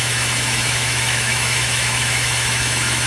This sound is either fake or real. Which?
fake